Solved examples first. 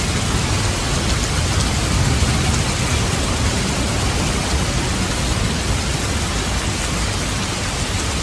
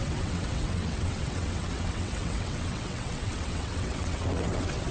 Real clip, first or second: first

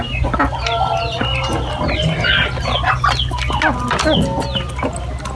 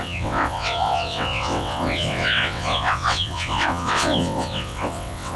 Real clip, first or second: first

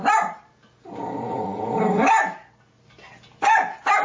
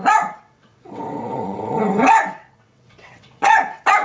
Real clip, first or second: first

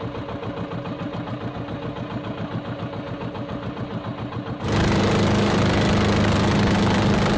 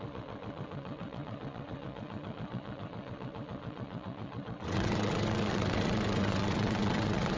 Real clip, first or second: first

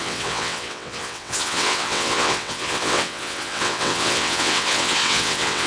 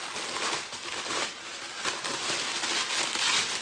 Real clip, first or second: second